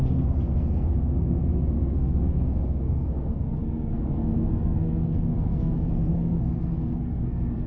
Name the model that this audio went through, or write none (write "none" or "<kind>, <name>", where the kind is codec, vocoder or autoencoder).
codec, SNAC